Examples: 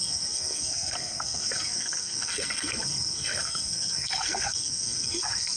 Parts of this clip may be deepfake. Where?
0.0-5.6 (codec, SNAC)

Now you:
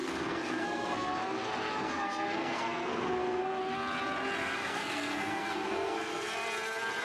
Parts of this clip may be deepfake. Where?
0.0-3.6 (codec, SNAC); 4.4-6.3

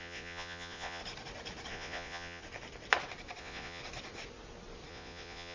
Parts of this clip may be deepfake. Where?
0.0-1.0 (vocoder, Vocos); 1.7-2.4; 3.4-3.8; 4.9-5.5